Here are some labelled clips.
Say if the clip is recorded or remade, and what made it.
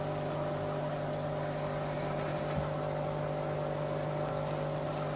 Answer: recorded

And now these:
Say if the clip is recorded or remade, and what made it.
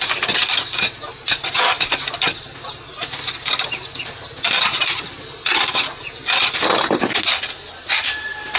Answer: recorded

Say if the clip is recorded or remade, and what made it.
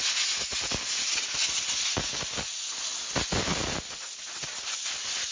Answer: recorded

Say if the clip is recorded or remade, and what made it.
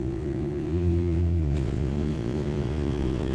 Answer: remade, vocoder, Vocos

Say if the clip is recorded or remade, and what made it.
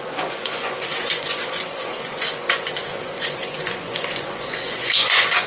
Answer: remade, vocoder, Vocos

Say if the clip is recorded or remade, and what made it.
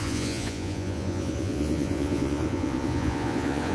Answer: remade, vocoder, Vocos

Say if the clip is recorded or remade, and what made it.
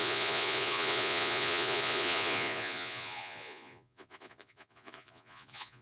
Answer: remade, vocoder, Vocos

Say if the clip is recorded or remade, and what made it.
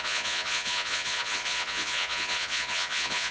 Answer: remade, vocoder, Vocos